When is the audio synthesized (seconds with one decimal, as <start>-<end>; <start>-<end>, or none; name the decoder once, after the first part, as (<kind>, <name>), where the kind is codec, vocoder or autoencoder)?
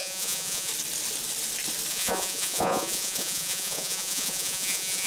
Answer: 0.0-0.7 (vocoder, Vocos); 1.9-5.1